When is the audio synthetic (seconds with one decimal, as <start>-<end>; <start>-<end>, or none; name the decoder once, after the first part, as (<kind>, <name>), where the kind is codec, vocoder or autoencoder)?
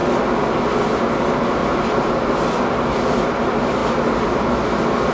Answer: 1.6-3.2 (vocoder, BigVGAN v2); 3.8-4.3